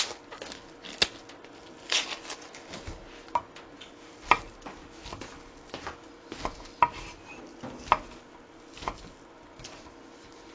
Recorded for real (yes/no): yes